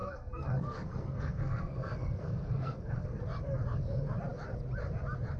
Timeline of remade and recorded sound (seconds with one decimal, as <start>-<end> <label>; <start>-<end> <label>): 0.0-3.2 remade; 3.2-5.4 recorded